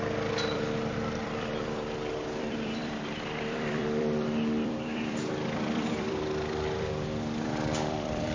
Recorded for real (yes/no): no